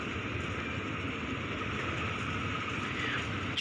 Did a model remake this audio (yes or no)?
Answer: no